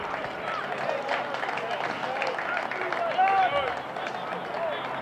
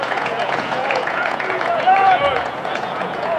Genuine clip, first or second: first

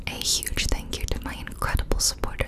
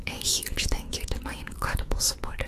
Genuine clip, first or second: first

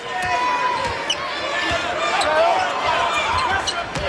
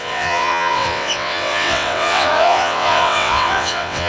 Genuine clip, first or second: first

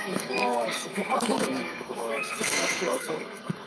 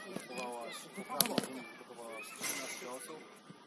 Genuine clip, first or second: second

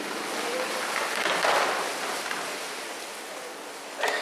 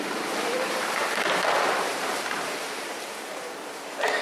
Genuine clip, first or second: first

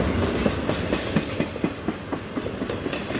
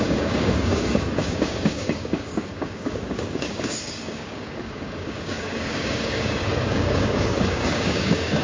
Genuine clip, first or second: first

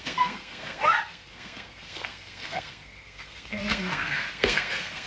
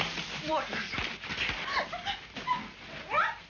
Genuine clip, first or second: second